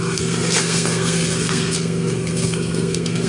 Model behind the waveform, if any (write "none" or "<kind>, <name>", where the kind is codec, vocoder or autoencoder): codec, SNAC